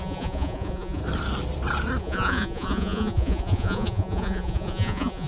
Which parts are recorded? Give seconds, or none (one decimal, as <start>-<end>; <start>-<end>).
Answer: 1.0-2.0